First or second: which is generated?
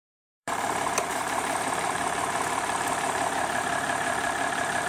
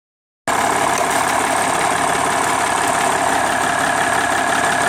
first